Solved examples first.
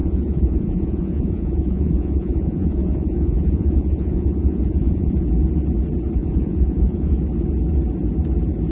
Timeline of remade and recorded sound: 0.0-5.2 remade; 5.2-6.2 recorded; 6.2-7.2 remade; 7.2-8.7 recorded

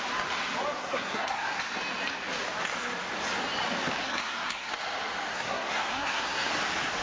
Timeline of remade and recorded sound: 0.0-0.8 recorded; 0.8-1.6 remade; 1.6-4.0 recorded; 4.0-4.7 remade; 4.7-5.3 recorded; 5.3-6.5 remade; 6.5-7.0 recorded

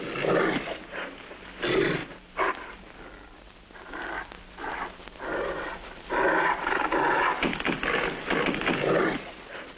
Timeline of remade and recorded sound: 0.0-9.8 recorded

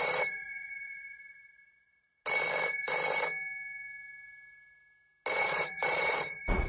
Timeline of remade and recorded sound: 0.0-2.2 remade; 2.2-5.3 recorded; 5.3-6.7 remade